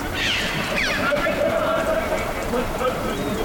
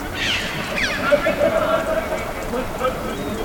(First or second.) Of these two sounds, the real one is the second